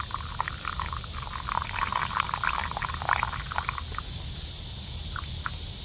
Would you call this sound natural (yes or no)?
yes